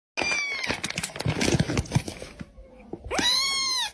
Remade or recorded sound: recorded